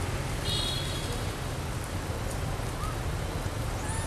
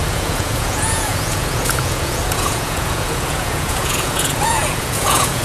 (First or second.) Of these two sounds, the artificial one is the second